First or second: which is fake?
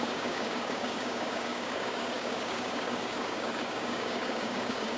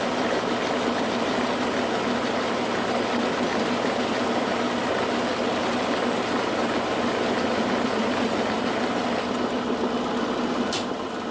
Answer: first